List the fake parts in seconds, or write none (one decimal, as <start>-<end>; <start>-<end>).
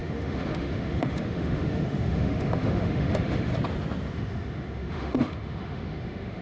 0.0-3.5; 4.1-6.4